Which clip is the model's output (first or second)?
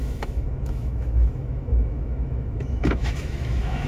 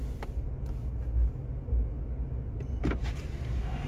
first